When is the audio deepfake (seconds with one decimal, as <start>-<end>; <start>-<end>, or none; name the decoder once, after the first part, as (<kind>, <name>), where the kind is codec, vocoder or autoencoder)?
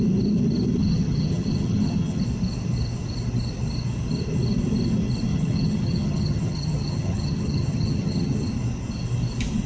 0.8-2.2 (vocoder, HiFi-GAN); 5.3-8.5